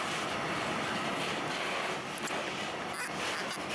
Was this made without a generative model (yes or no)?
yes